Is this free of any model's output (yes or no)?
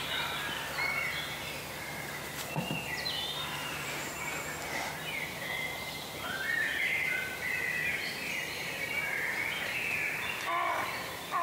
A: no